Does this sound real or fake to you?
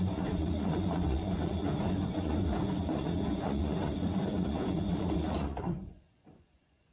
fake